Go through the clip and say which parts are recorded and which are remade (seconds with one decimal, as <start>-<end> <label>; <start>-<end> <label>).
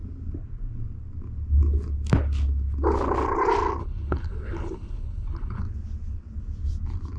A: 0.0-3.8 recorded; 3.8-5.6 remade; 5.6-7.2 recorded